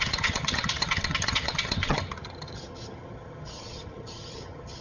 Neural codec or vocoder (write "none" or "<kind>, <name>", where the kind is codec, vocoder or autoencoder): vocoder, HiFi-GAN